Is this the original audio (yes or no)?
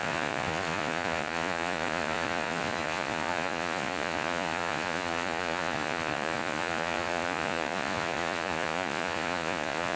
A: no